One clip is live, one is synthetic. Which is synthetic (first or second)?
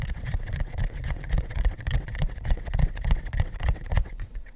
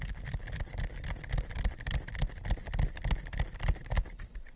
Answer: first